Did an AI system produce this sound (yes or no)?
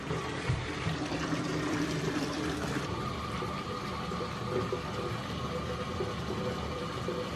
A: yes